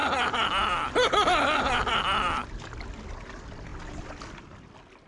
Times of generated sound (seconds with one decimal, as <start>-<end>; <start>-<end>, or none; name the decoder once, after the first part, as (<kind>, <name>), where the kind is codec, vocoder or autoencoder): none